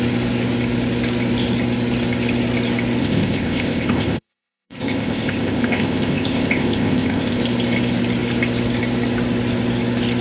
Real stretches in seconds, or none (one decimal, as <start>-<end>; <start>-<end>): 0.0-3.0; 7.4-10.2

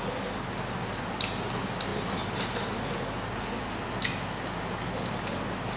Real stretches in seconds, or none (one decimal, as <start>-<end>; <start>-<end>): 0.0-5.8

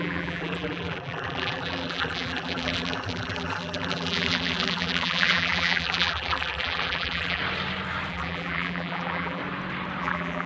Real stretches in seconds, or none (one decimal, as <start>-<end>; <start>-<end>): 7.4-8.1; 9.4-10.0

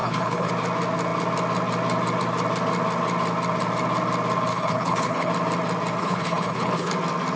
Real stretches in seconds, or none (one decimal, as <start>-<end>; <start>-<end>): 0.5-4.5; 5.3-6.0; 6.9-7.4